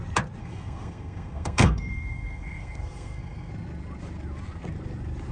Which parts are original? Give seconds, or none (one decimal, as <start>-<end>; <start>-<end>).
0.0-0.4; 3.5-5.3